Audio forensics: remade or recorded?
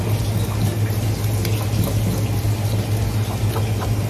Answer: recorded